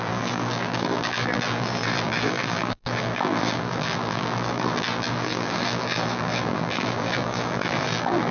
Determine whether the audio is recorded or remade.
remade